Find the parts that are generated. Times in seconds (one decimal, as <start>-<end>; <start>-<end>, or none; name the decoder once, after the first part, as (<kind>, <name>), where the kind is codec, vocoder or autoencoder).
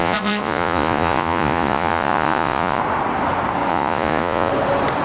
0.0-2.8 (vocoder, Vocos); 3.7-4.5